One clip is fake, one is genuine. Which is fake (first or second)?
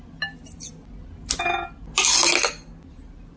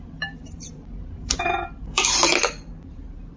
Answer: second